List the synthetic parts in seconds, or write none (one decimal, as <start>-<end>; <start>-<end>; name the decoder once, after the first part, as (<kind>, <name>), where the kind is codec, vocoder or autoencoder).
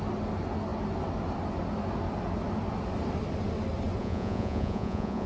4.0-5.3 (vocoder, Vocos)